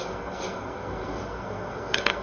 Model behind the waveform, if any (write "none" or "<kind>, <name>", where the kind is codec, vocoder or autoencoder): codec, SNAC